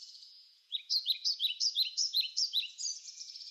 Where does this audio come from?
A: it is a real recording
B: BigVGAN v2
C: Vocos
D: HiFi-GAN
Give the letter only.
C